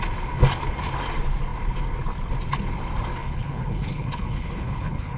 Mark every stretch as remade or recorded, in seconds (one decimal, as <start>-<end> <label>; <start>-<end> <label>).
0.0-3.2 recorded; 3.2-5.2 remade